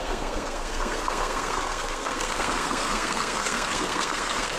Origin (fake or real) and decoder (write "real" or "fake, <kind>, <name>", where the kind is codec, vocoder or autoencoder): fake, codec, SNAC